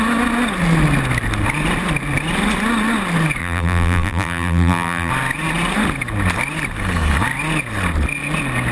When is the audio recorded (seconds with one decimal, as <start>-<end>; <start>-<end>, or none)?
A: 0.0-3.4; 5.1-8.7